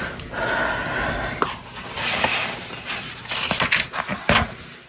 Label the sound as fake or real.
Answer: real